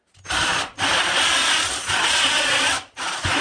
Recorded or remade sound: recorded